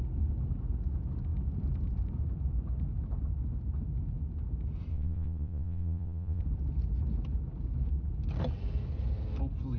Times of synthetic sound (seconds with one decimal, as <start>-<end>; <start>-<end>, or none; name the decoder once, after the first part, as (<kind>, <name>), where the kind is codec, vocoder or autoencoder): 4.9-6.4 (vocoder, Vocos)